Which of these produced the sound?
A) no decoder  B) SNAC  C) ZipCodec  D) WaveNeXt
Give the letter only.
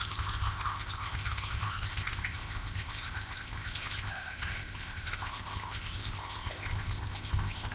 C